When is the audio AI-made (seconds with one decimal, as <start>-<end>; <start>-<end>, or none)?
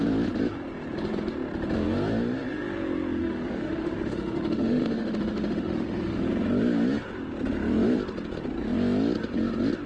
3.2-6.3